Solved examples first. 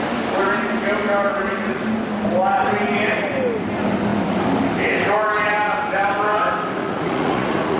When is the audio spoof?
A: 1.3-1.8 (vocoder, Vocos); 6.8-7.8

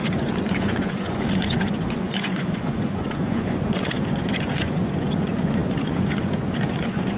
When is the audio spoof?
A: 0.0-7.2 (vocoder, Vocos)

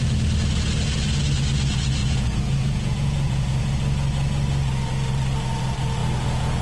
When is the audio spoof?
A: 2.0-3.7 (vocoder, Vocos); 6.0-6.6

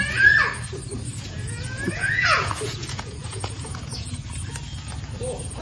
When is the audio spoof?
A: 1.1-4.3 (vocoder, Vocos)